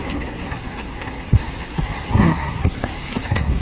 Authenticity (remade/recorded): remade